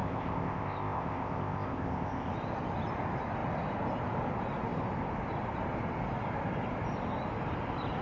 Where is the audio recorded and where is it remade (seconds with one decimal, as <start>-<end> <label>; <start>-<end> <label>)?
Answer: 0.0-2.3 remade; 2.3-8.0 recorded